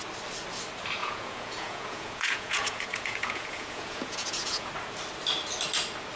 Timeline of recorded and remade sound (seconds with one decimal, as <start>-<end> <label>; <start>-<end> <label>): 0.0-1.0 recorded; 1.0-4.7 remade; 4.7-6.2 recorded